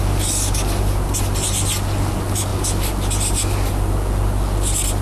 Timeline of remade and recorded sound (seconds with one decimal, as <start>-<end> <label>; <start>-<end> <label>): 0.0-5.0 recorded